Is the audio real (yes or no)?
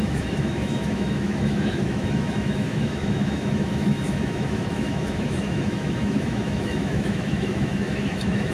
no